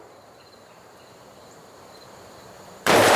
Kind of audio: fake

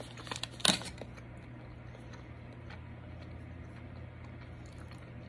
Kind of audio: real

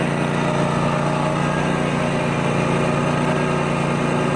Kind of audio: real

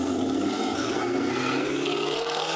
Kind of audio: fake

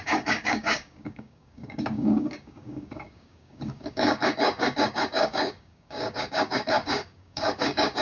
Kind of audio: fake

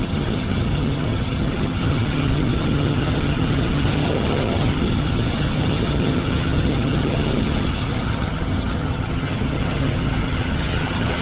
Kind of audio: fake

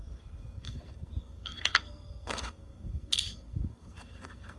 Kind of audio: fake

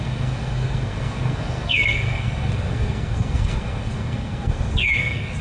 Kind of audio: fake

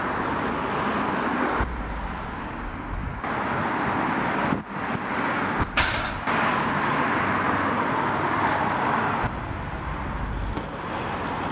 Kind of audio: real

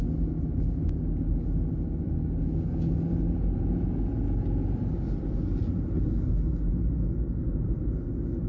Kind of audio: real